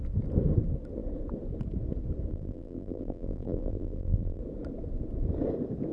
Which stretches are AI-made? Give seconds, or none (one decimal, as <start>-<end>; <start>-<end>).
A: 2.3-4.4